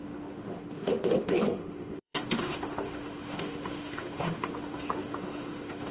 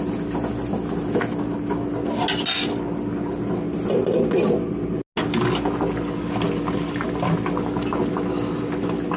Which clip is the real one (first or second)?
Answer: second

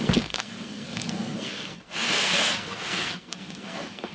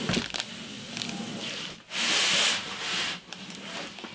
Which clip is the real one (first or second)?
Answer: second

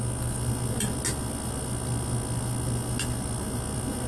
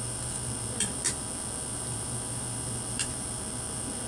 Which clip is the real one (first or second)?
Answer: first